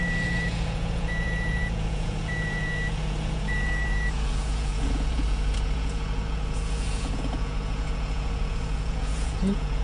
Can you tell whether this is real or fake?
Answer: fake